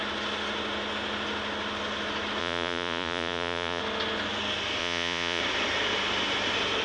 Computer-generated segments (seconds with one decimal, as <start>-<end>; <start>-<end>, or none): 2.4-3.8; 4.8-5.4

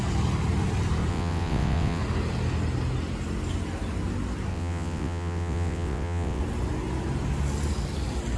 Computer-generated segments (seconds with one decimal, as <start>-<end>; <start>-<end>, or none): 1.1-2.0; 4.5-6.4

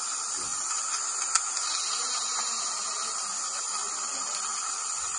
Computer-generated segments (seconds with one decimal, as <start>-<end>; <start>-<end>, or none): 0.5-3.6

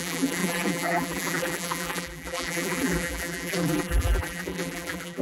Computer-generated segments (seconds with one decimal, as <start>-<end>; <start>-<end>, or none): 0.0-5.2